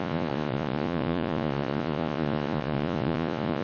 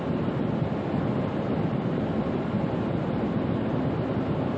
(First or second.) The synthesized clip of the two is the first